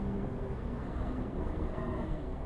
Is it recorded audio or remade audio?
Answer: remade